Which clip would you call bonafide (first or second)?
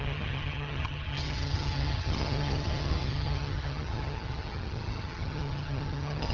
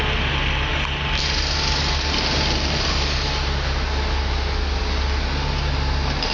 second